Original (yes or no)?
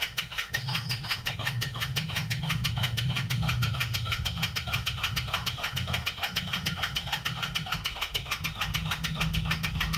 no